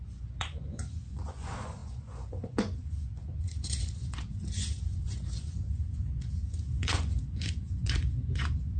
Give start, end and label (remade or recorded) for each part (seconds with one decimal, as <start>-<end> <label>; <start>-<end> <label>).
0.0-8.8 remade